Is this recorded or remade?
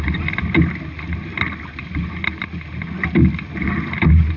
recorded